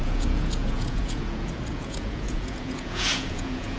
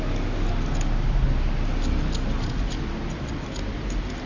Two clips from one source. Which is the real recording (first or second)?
second